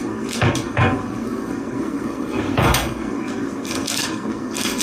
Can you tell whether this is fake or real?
fake